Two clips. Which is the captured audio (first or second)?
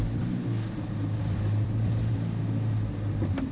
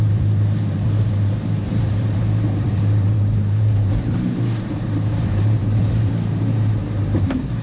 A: first